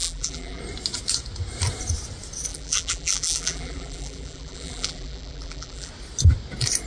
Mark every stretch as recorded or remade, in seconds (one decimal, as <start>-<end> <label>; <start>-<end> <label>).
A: 0.0-0.6 remade; 0.6-2.5 recorded; 2.5-5.9 remade; 5.9-6.9 recorded